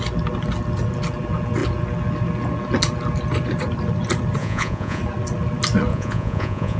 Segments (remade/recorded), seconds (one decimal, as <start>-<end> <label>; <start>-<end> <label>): 0.0-4.4 recorded; 4.4-5.0 remade; 5.0-5.9 recorded; 5.9-6.8 remade